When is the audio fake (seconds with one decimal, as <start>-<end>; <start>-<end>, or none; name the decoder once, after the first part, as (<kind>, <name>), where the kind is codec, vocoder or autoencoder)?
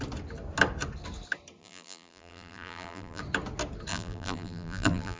1.6-3.2 (vocoder, BigVGAN v2); 3.9-5.2